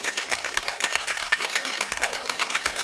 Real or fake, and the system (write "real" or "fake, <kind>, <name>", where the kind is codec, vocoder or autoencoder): fake, codec, SNAC